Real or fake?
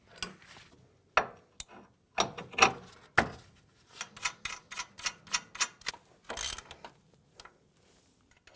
real